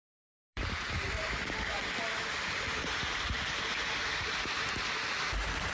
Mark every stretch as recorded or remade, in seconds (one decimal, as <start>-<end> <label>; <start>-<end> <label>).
0.0-1.6 remade; 1.6-2.8 recorded; 2.8-3.6 remade; 3.6-5.7 recorded